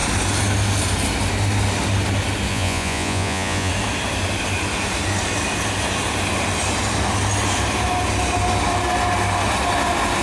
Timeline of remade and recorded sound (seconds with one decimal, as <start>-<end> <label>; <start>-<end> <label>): 0.0-2.5 recorded; 2.5-3.7 remade; 3.7-10.2 recorded